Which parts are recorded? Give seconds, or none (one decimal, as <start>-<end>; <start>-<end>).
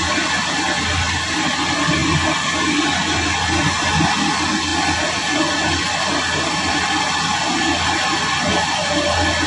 0.0-9.5